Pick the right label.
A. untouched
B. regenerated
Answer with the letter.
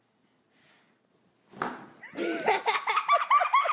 A